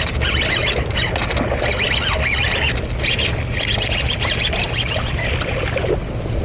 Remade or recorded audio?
recorded